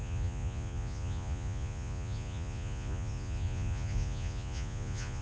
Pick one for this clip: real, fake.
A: fake